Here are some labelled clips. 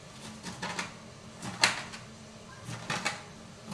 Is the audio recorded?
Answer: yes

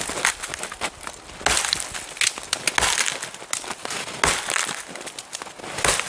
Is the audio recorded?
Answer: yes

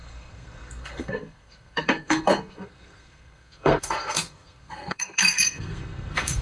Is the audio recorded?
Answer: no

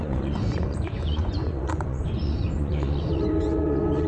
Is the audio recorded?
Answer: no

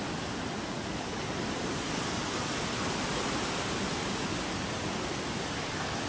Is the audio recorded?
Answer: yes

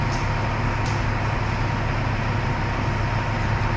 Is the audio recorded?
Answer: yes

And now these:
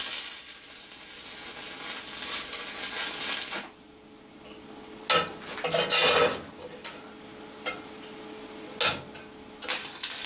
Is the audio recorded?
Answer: yes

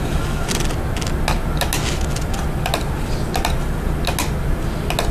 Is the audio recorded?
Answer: yes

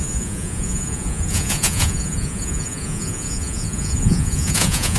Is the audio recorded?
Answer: no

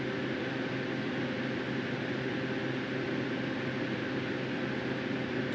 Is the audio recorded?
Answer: yes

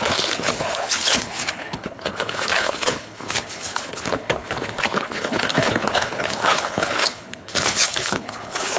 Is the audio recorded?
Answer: no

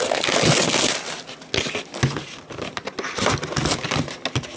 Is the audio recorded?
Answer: yes